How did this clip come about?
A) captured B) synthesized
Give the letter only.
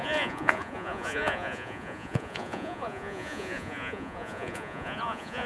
B